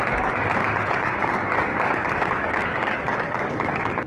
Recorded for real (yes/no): no